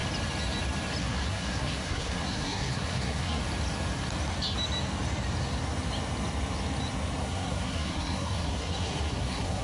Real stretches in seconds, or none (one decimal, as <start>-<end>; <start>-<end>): 0.0-1.0; 3.4-7.2